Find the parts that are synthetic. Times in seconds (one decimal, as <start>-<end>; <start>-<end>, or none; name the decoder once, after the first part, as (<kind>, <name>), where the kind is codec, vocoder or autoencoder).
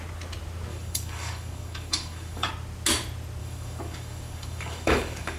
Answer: 0.7-2.5 (codec, DAC); 3.4-5.4